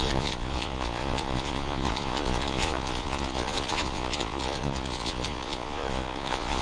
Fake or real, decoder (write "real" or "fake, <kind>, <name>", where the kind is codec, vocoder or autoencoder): fake, vocoder, Vocos